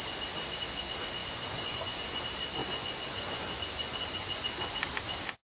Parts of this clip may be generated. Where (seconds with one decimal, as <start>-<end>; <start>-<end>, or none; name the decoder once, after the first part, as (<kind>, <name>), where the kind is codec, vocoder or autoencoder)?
1.2-2.2 (vocoder, Vocos); 2.6-4.8